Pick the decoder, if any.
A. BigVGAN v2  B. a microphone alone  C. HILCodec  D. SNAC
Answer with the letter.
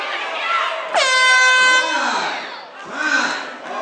B